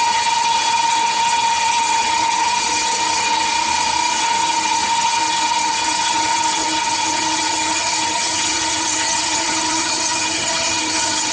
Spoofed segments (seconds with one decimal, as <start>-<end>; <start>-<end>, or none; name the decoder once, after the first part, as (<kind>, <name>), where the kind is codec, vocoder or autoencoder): 0.0-3.5 (vocoder, HiFi-GAN); 4.2-11.3